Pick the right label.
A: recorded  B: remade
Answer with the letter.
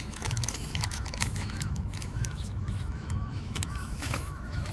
B